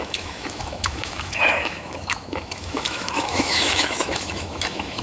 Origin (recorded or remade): remade